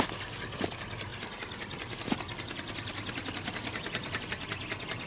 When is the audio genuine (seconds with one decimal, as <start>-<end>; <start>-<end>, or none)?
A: 0.0-5.1